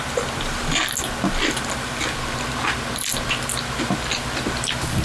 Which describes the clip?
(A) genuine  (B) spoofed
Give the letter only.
A